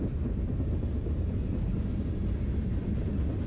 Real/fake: fake